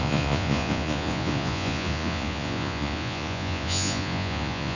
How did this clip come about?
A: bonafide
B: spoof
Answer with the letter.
B